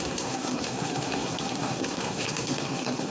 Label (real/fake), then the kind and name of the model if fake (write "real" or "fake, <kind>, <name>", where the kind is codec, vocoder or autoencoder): fake, codec, SNAC